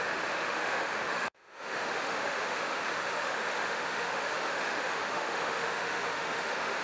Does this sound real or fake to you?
fake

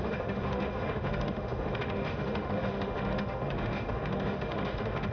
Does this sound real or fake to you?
fake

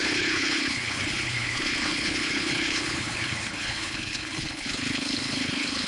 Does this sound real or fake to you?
fake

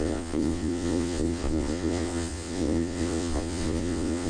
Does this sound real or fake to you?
fake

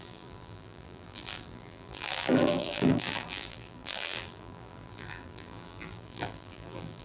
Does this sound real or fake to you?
fake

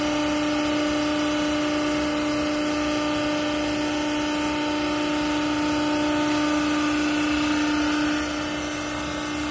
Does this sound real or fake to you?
real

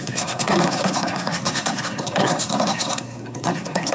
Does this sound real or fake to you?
fake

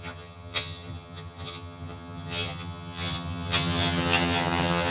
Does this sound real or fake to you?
fake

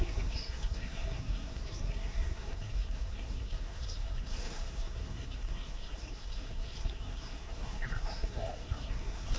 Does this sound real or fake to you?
fake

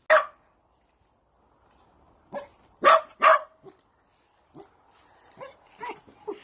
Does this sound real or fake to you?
real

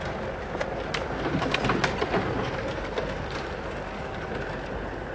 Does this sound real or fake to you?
real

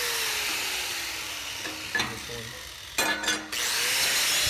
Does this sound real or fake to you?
real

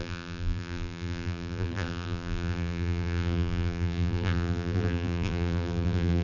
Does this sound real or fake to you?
fake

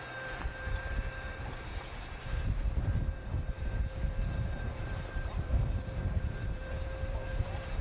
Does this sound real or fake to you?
fake